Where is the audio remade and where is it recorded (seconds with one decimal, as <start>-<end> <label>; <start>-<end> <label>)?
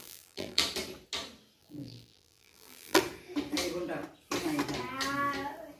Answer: 0.0-0.6 remade; 0.6-1.6 recorded; 1.6-3.0 remade; 3.0-5.8 recorded